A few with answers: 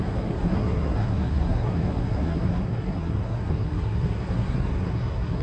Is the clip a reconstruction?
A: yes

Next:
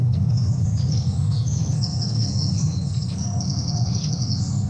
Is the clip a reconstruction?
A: yes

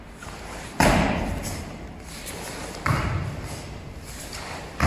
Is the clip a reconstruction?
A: no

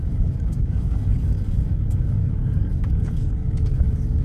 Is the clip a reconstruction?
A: yes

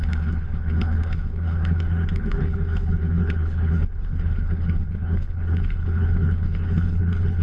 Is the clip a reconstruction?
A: yes